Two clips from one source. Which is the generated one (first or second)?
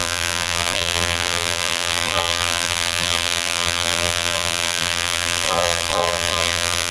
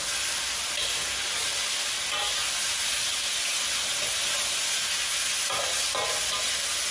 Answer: first